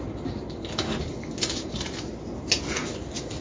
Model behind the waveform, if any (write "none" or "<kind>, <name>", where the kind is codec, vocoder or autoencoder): none